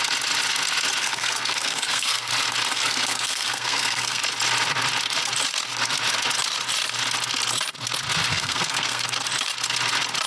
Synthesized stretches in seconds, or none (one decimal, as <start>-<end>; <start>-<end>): 1.0-2.3; 2.7-4.2; 8.3-9.0